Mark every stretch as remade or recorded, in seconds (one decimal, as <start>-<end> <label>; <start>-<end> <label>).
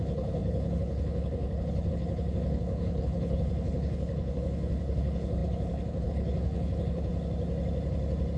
0.0-7.1 remade; 7.1-8.4 recorded